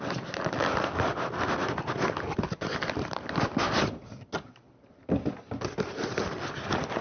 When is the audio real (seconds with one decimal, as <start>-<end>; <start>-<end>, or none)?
0.0-7.0